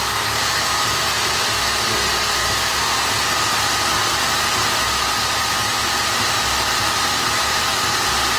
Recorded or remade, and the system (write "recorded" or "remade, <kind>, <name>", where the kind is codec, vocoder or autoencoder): recorded